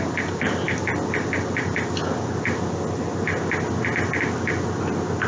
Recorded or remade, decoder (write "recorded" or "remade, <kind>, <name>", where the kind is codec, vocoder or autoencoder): recorded